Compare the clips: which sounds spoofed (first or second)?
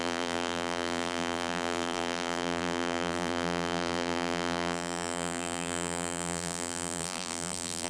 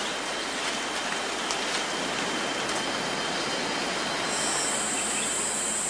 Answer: first